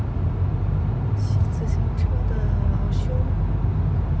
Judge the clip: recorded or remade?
recorded